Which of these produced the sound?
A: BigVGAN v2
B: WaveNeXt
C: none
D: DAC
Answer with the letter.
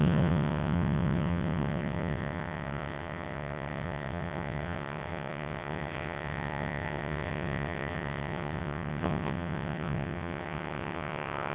B